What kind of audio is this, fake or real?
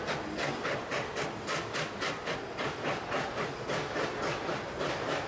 real